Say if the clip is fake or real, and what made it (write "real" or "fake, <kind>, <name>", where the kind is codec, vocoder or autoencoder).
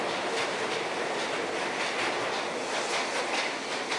real